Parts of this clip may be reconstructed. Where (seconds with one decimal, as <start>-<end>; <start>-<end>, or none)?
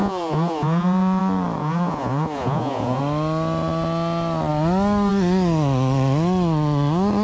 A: 0.0-1.2; 1.6-3.0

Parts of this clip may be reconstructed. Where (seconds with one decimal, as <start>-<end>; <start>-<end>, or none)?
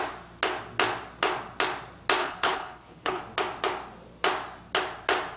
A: 2.2-3.2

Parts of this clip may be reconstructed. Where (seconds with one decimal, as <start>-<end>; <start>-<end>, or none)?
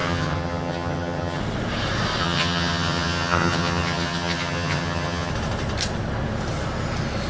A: 0.0-1.4; 2.2-5.3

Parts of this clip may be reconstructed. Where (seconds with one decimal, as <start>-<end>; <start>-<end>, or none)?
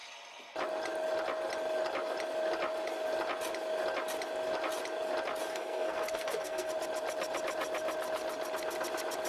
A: 5.5-6.7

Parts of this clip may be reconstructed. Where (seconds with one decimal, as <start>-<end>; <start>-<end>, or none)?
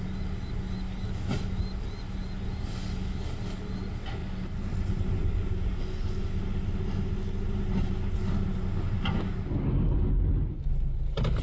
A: none